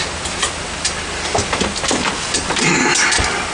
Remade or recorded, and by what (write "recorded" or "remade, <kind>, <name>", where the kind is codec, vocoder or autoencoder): recorded